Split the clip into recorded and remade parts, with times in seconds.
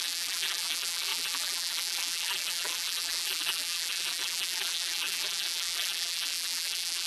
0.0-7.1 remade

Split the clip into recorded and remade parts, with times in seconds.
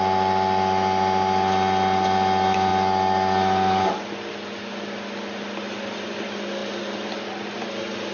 0.0-8.1 recorded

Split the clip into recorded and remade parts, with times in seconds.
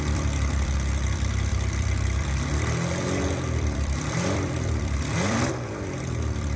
0.0-6.6 remade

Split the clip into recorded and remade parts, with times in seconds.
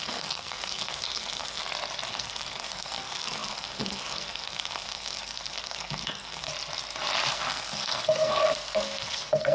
0.0-1.6 remade; 1.6-2.1 recorded; 2.1-6.5 remade; 6.5-7.3 recorded; 7.3-9.5 remade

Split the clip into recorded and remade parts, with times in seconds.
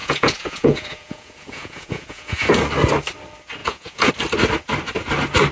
0.0-2.5 remade; 2.5-3.6 recorded; 3.6-4.1 remade; 4.1-5.5 recorded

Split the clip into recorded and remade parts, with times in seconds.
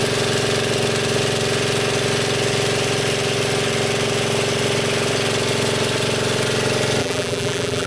0.0-7.0 recorded; 7.0-7.9 remade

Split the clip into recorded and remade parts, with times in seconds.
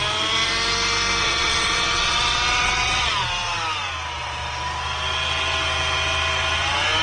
0.0-1.2 recorded; 1.2-3.1 remade; 3.1-7.0 recorded